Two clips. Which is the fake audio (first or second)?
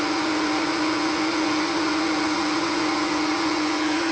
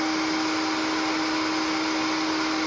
first